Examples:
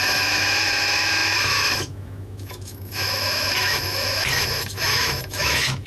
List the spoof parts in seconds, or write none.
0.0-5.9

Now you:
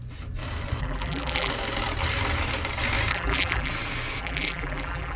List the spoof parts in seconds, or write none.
0.8-1.5; 3.1-3.7; 4.2-5.2

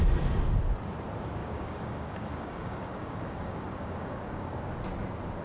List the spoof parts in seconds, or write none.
1.4-4.6